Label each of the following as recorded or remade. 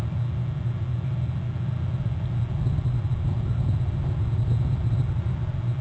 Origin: recorded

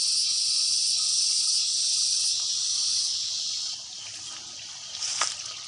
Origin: recorded